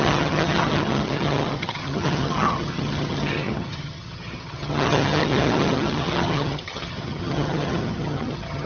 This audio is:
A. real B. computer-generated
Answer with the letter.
B